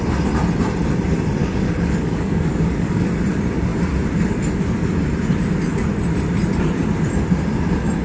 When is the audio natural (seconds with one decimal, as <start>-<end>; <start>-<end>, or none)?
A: 0.0-1.4; 3.1-8.0